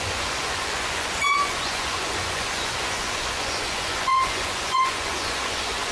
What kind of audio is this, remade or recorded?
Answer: remade